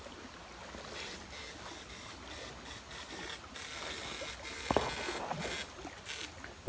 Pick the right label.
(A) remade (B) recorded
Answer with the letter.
B